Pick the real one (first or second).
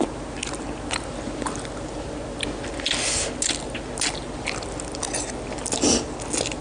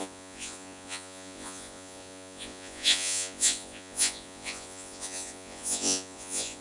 first